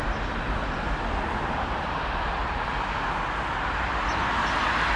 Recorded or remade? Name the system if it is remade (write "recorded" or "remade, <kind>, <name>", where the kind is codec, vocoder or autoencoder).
recorded